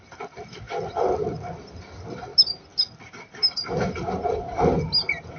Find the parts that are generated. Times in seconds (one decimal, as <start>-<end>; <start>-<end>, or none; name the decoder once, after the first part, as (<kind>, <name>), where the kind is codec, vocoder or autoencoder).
none